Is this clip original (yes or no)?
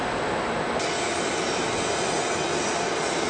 yes